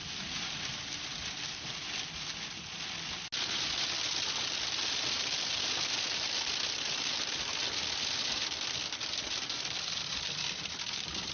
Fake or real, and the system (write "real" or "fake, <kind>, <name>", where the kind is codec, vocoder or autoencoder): real